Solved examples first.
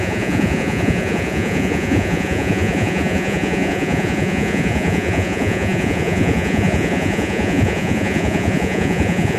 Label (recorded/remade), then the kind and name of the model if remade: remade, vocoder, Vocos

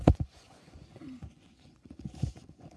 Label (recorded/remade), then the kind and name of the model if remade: remade, vocoder, Vocos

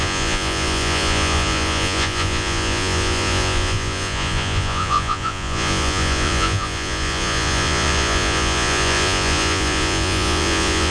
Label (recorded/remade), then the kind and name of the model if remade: remade, vocoder, Vocos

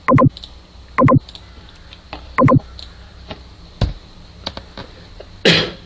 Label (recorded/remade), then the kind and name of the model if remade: recorded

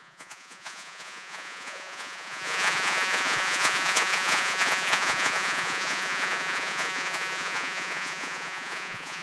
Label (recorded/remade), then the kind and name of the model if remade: remade, vocoder, Vocos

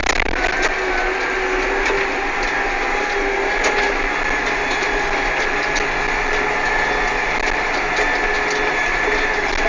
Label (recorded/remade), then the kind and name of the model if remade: recorded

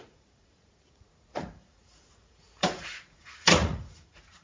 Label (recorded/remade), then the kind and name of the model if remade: remade, vocoder, Vocos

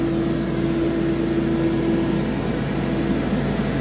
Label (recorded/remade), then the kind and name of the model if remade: recorded